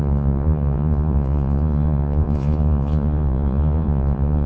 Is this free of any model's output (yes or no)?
no